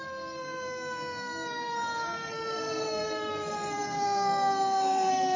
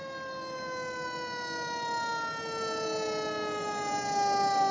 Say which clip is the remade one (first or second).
first